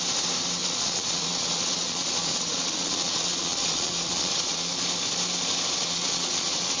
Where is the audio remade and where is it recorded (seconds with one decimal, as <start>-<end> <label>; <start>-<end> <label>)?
0.0-0.6 recorded; 0.6-4.7 remade; 4.7-5.8 recorded; 5.8-6.8 remade